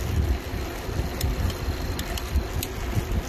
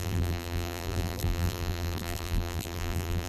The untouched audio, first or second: first